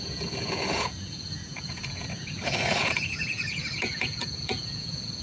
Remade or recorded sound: remade